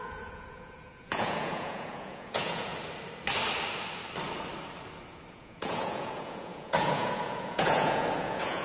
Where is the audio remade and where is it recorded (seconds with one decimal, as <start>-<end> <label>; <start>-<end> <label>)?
0.0-2.7 remade; 2.7-5.3 recorded; 5.3-8.6 remade